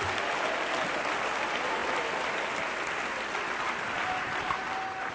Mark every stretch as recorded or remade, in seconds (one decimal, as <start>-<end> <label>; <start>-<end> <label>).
0.0-5.1 recorded